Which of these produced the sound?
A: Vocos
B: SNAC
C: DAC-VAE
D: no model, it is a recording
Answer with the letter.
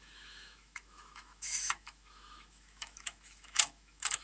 C